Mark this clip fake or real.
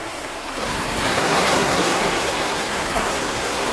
fake